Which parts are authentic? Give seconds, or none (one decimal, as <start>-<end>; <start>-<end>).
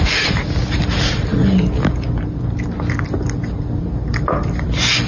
0.0-5.1